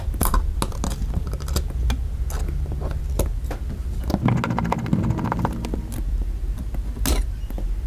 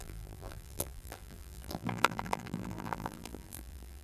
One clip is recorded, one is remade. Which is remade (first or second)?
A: second